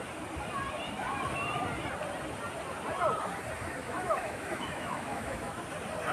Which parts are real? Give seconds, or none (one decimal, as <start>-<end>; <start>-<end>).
0.0-3.8; 5.6-6.1